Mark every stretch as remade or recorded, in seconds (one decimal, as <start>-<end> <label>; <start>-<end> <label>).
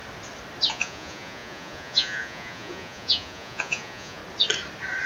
0.0-0.7 recorded; 0.7-4.2 remade; 4.2-5.1 recorded